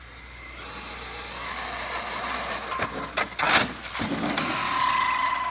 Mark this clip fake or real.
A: real